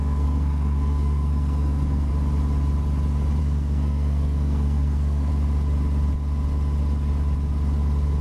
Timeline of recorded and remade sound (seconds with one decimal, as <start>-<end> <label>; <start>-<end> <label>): 0.0-2.1 remade; 2.1-3.4 recorded; 3.4-5.3 remade; 5.3-8.2 recorded